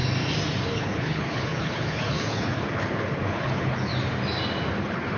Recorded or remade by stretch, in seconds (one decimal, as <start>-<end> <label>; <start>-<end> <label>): 0.0-0.7 recorded; 0.7-3.9 remade; 3.9-4.8 recorded; 4.8-5.2 remade